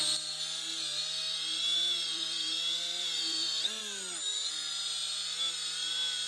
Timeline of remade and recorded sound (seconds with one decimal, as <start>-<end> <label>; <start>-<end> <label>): 0.0-1.2 recorded; 1.2-3.8 remade; 3.8-6.3 recorded